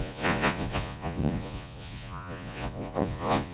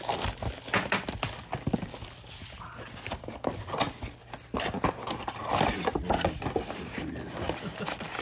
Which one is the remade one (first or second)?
first